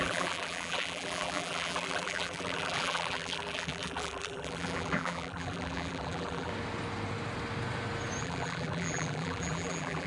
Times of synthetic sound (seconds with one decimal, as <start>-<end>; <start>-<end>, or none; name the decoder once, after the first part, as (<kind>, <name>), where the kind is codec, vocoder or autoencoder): 0.0-6.5 (vocoder, BigVGAN v2); 8.2-10.1